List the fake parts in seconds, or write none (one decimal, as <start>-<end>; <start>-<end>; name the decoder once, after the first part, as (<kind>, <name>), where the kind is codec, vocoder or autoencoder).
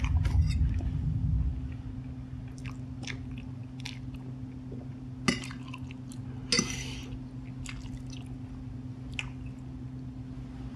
none